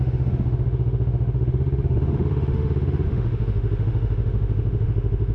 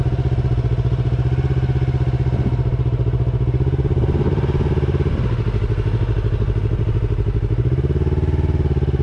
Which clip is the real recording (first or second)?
second